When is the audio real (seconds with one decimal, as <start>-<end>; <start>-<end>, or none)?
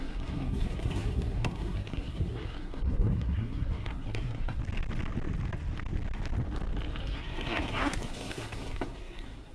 4.6-7.0